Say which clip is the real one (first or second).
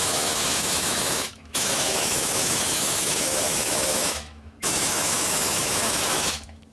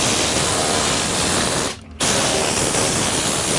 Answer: second